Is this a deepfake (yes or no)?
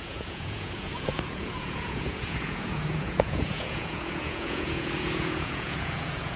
yes